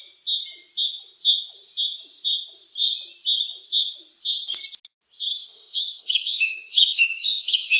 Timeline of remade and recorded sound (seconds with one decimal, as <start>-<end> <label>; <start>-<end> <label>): 0.0-5.3 recorded; 5.3-7.8 remade

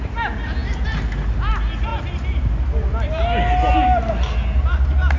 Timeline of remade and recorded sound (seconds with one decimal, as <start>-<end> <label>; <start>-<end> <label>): 0.0-5.2 recorded

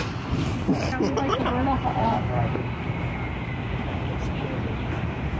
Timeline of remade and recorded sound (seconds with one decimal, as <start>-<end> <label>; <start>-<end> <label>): 0.0-5.4 recorded

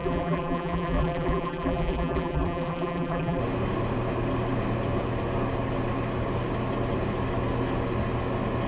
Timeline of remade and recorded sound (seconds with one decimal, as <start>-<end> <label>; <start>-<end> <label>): 0.0-3.4 remade; 3.4-8.7 recorded